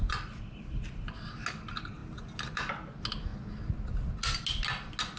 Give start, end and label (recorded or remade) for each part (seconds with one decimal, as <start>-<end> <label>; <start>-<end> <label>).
0.0-5.2 recorded